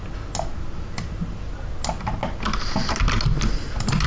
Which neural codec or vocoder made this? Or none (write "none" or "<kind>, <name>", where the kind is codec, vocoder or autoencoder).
none